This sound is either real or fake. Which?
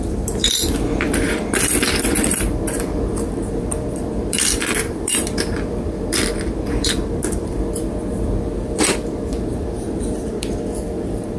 fake